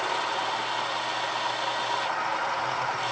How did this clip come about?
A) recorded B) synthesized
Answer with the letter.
A